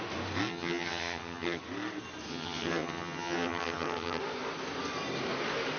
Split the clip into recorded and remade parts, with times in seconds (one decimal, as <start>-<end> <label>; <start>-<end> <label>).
0.0-0.5 recorded; 0.5-1.6 remade; 1.6-2.3 recorded; 2.3-4.2 remade; 4.2-5.8 recorded